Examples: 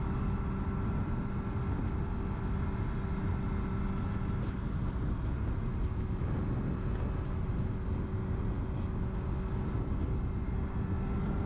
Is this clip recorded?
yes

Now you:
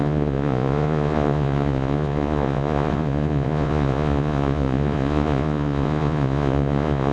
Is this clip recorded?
no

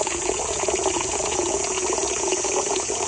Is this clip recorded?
no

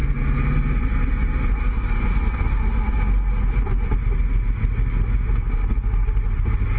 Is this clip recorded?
yes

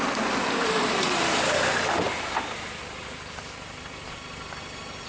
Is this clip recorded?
yes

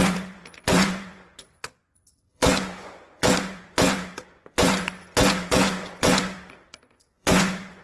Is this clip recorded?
no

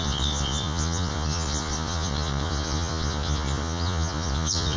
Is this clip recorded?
no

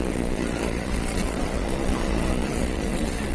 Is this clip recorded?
no